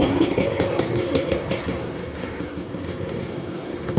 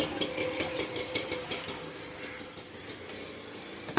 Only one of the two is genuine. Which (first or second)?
second